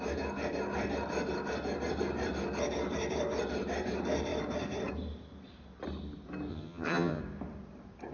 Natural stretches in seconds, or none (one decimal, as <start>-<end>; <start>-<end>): 0.0-6.5; 7.2-8.1